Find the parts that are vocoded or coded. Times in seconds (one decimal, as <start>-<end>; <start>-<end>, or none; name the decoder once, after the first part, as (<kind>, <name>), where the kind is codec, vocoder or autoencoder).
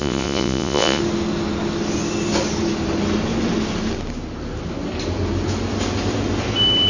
0.0-1.0 (vocoder, Vocos)